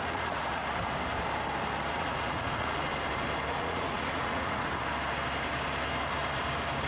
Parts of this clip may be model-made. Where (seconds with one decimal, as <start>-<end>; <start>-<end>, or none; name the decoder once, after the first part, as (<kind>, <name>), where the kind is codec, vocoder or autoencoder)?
0.0-0.6 (vocoder, Vocos); 1.9-2.9; 3.5-4.7